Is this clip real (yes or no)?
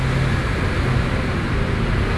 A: yes